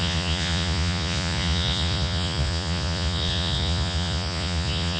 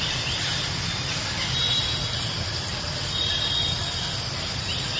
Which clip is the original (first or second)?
second